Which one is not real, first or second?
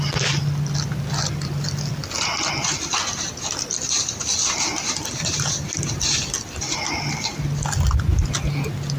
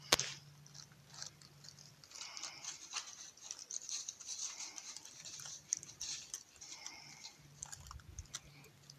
second